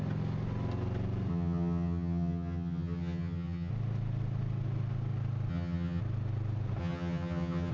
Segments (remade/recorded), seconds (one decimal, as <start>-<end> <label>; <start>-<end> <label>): 0.0-1.3 recorded; 1.3-3.7 remade; 3.7-5.5 recorded; 5.5-6.0 remade; 6.0-6.8 recorded; 6.8-7.7 remade